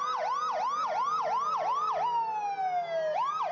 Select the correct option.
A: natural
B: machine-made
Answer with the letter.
A